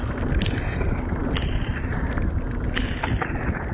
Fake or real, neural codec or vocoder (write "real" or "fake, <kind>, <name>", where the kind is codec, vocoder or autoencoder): real